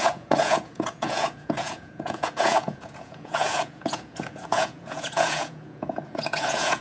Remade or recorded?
remade